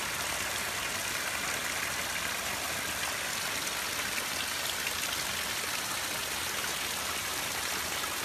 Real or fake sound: real